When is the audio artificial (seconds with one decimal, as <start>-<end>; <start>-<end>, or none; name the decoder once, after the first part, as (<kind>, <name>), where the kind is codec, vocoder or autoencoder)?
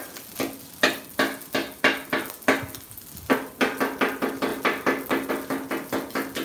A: none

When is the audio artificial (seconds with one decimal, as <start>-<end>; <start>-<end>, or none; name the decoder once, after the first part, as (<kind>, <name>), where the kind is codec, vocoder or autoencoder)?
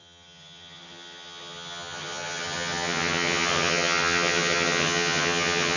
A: 0.0-5.8 (vocoder, HiFi-GAN)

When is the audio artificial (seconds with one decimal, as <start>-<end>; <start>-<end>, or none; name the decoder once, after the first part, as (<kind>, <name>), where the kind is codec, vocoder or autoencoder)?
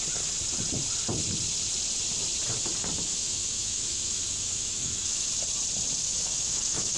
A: 3.1-5.3 (autoencoder, DAC-VAE); 6.0-7.0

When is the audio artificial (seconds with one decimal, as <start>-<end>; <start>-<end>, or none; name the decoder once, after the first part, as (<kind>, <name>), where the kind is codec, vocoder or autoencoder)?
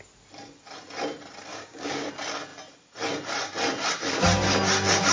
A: 1.5-2.1 (codec, DAC)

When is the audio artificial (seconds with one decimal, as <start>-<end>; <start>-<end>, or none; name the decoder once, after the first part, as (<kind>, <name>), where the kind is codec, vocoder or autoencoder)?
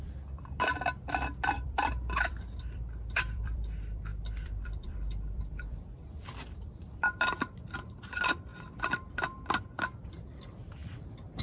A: 0.0-10.8 (vocoder, BigVGAN v2)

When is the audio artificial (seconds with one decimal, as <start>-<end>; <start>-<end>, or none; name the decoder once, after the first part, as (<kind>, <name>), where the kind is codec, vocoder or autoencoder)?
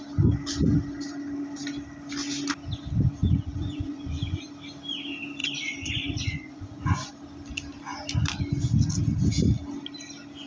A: 3.2-4.5 (vocoder, Vocos); 5.4-7.1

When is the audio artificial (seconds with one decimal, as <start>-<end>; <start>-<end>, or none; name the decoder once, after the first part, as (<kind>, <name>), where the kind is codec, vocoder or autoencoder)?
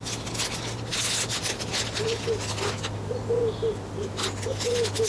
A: none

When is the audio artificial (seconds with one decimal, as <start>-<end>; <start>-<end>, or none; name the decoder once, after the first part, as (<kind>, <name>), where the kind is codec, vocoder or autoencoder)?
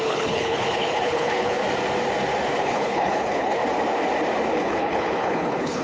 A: 0.0-1.6 (codec, HILCodec); 2.6-3.6; 4.5-5.8